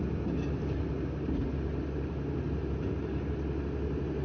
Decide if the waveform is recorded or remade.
recorded